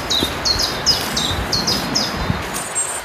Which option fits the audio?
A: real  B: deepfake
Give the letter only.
A